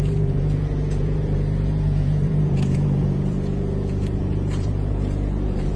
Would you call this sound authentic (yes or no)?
no